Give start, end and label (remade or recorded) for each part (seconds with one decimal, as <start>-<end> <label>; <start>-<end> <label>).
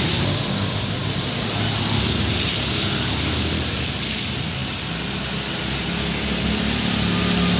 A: 0.0-7.6 recorded